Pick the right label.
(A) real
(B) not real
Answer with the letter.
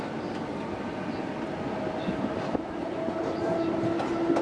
A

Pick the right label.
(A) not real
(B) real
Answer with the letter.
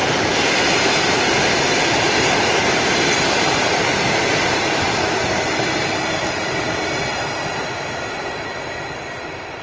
B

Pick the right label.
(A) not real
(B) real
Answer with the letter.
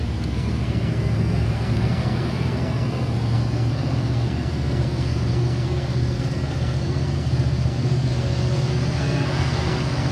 A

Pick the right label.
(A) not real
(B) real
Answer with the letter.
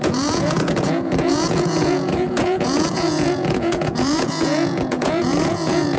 A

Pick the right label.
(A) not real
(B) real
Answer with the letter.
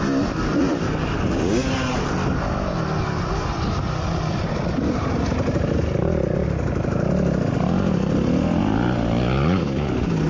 B